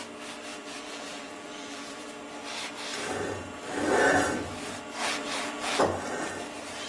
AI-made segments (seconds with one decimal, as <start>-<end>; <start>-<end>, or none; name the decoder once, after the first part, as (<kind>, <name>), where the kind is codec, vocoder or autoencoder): 0.5-2.1 (vocoder, BigVGAN v2); 5.0-5.8